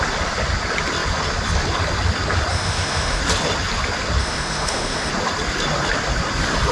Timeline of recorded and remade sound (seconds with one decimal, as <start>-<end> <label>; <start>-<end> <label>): 0.0-2.5 recorded; 2.5-3.2 remade; 3.2-4.2 recorded; 4.2-5.1 remade; 5.1-6.7 recorded